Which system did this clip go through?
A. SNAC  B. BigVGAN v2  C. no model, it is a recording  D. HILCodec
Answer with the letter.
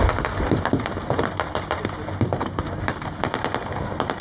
C